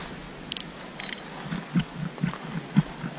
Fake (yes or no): no